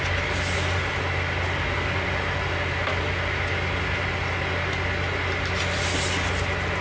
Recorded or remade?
recorded